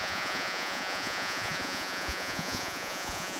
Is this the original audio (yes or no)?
no